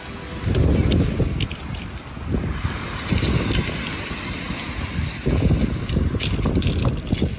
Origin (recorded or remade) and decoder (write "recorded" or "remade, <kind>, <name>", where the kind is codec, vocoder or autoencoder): recorded